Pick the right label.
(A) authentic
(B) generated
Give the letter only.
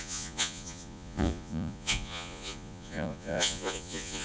B